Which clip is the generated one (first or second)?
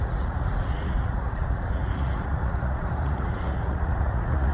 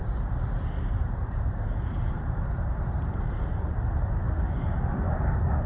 first